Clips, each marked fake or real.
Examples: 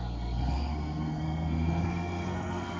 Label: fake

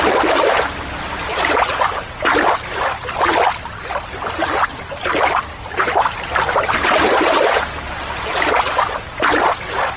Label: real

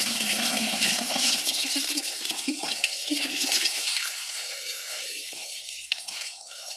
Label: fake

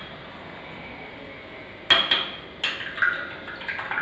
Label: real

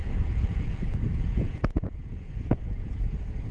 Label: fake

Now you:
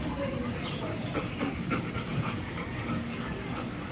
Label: fake